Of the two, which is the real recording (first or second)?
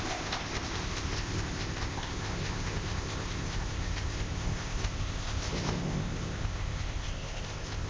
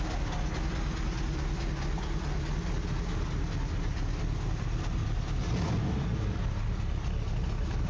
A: second